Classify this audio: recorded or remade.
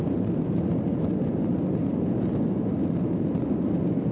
recorded